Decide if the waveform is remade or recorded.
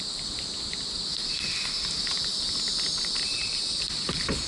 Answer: recorded